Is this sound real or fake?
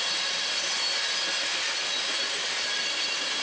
real